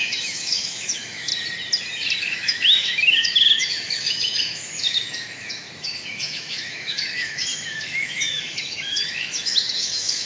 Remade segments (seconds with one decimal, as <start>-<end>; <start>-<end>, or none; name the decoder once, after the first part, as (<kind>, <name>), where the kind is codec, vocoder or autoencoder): 0.0-1.3 (autoencoder, DAC-VAE); 2.2-10.3